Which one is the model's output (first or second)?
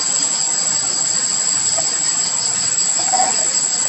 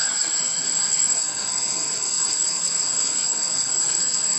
second